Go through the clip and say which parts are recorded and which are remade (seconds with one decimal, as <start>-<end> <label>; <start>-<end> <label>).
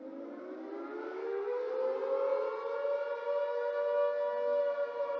0.0-1.0 recorded; 1.0-1.7 remade; 1.7-5.2 recorded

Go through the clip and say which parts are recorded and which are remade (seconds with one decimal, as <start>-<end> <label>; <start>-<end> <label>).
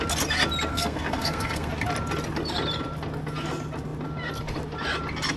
0.0-0.7 recorded; 0.7-1.7 remade; 1.7-5.4 recorded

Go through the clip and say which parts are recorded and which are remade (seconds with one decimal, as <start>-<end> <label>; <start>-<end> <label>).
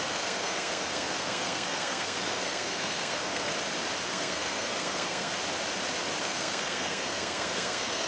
0.0-3.5 remade; 3.5-4.1 recorded; 4.1-5.3 remade; 5.3-6.2 recorded; 6.2-8.1 remade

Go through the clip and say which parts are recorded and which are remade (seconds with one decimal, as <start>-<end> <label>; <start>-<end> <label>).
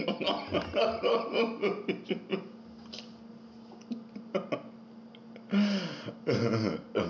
0.0-7.1 recorded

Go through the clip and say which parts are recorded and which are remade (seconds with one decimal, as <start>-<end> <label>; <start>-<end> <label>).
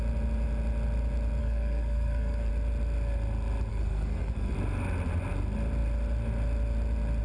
0.0-1.4 recorded; 1.4-2.5 remade; 2.5-3.7 recorded; 3.7-4.5 remade; 4.5-7.2 recorded